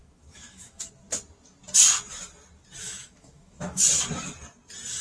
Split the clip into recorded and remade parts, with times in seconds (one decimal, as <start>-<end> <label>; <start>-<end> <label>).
0.0-0.9 remade; 0.9-2.8 recorded; 2.8-3.8 remade; 3.8-5.0 recorded